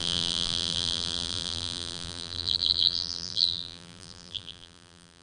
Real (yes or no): no